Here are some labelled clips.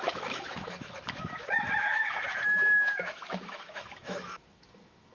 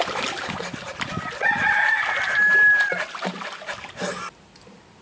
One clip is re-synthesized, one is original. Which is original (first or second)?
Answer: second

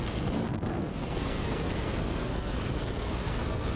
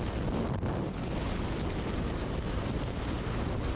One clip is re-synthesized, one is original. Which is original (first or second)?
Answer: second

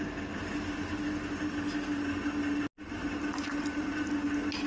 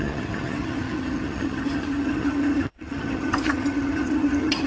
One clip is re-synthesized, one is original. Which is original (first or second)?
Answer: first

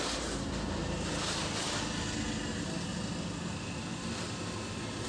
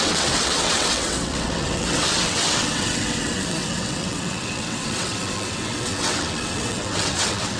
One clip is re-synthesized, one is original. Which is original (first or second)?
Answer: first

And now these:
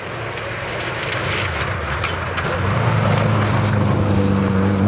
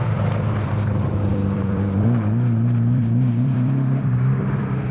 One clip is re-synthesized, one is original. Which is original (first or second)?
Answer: first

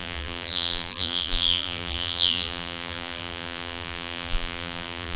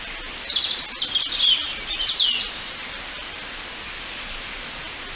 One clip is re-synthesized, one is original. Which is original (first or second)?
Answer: second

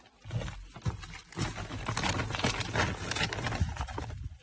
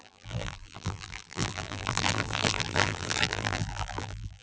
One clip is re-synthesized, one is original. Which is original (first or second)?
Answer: first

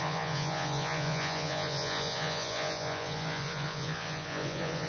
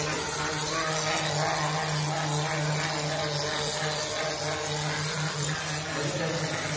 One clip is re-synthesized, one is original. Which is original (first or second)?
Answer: second